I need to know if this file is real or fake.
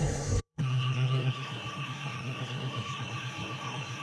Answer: fake